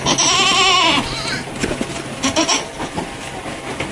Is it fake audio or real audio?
real